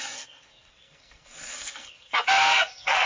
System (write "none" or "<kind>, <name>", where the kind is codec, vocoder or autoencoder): codec, SNAC